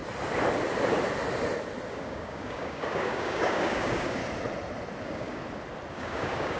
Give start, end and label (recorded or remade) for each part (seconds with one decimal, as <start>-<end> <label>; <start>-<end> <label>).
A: 0.0-1.9 recorded; 1.9-4.2 remade; 4.2-5.0 recorded; 5.0-5.4 remade; 5.4-5.9 recorded; 5.9-6.6 remade